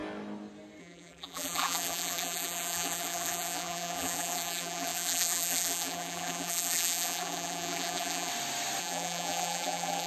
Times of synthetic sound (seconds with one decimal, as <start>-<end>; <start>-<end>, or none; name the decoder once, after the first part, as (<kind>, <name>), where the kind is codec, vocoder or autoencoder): 0.8-8.3 (vocoder, BigVGAN v2); 8.8-10.1